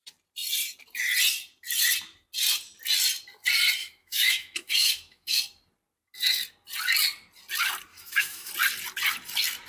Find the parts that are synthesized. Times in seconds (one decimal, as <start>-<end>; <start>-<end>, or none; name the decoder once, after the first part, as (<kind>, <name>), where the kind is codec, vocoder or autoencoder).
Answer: 3.8-5.4 (autoencoder, DAC-VAE); 7.9-8.5